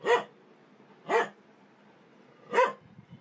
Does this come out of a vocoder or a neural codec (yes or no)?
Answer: no